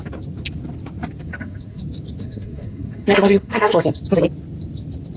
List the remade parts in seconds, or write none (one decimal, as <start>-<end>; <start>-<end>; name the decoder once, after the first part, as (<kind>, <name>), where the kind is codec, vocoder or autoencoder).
1.3-1.8 (codec, SNAC); 2.2-4.0